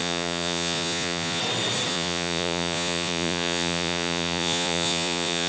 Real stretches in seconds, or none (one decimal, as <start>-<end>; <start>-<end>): 1.4-1.9

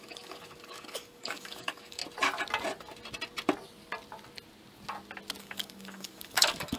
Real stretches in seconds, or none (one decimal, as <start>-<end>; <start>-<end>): 2.0-5.4